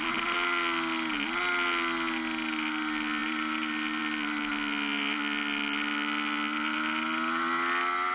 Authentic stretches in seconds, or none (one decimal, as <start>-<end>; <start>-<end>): 0.0-8.1